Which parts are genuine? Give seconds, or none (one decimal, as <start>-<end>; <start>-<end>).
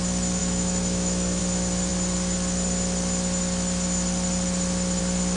0.0-0.4; 1.4-5.4